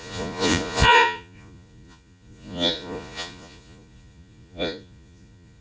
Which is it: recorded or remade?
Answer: remade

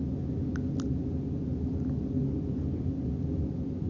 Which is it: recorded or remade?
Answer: recorded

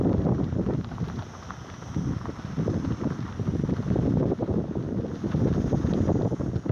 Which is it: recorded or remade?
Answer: recorded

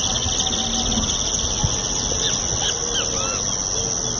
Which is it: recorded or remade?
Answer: recorded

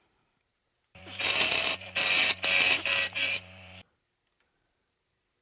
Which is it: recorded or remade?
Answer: remade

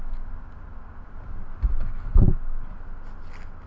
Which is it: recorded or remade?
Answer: recorded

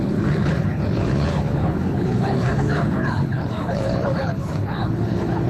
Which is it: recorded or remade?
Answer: remade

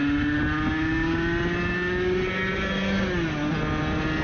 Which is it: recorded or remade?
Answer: recorded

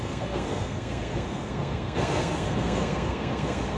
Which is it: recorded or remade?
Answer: remade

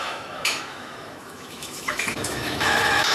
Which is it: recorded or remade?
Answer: remade